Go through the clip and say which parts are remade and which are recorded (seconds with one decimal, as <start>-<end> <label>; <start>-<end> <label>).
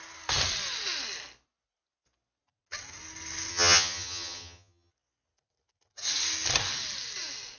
0.0-3.5 recorded; 3.5-4.9 remade; 4.9-7.6 recorded